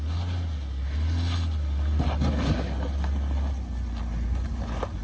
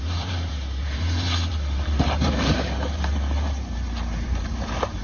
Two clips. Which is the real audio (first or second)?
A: first